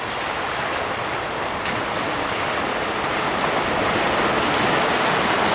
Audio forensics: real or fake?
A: real